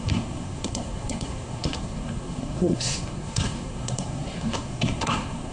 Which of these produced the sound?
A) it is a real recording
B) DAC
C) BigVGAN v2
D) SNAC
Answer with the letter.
D